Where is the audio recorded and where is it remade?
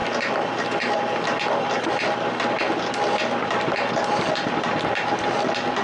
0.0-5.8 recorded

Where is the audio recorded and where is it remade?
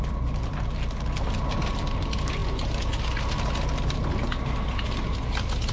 0.0-5.7 recorded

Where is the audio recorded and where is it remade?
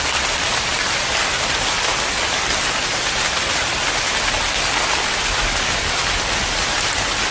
0.0-7.3 recorded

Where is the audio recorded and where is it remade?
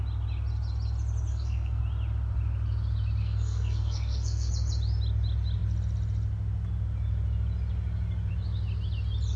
0.0-1.3 recorded; 1.3-1.8 remade; 1.8-3.2 recorded; 3.2-4.5 remade; 4.5-9.4 recorded